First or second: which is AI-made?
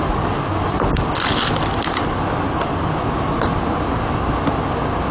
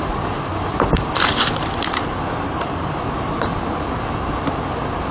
second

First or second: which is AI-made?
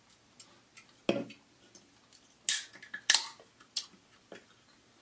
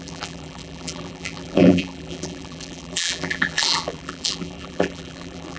second